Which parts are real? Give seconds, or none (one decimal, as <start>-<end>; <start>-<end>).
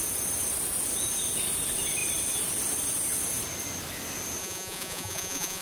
0.0-4.4